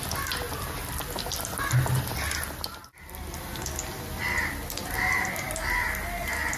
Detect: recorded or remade recorded